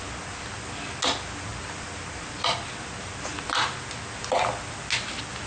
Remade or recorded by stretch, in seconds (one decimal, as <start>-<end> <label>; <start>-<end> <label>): 0.0-5.5 recorded